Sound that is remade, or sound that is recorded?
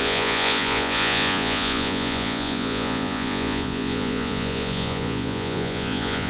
remade